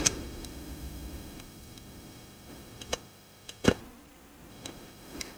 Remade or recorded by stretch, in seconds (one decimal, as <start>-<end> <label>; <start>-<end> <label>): 0.0-3.8 remade; 3.8-4.5 recorded; 4.5-5.4 remade